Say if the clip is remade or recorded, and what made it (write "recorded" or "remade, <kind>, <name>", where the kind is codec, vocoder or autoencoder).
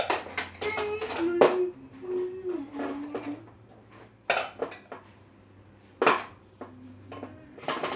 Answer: recorded